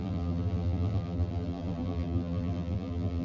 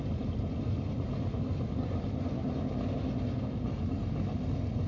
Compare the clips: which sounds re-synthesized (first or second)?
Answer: first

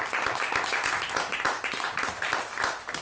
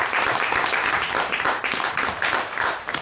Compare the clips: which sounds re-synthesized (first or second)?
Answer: second